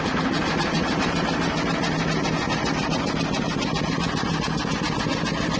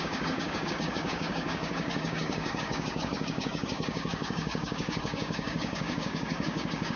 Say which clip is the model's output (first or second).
second